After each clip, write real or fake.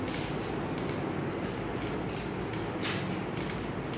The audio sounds real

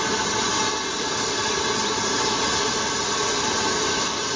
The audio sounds real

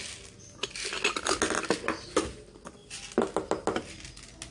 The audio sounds real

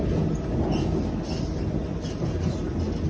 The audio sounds real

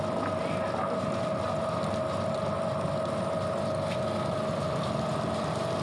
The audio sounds real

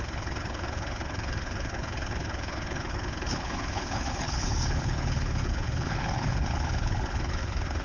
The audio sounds fake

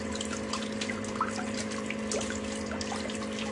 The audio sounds real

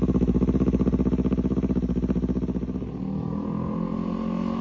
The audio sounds real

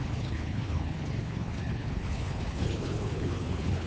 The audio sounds fake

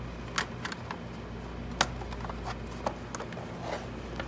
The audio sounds real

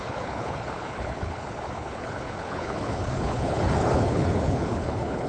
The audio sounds fake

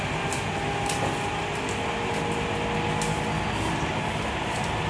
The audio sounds real